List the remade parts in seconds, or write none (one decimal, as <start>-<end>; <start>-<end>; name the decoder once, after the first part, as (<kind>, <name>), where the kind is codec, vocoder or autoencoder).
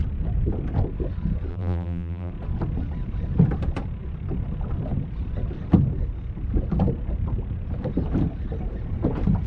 1.5-2.3 (vocoder, BigVGAN v2)